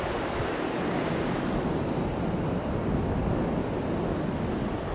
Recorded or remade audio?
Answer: recorded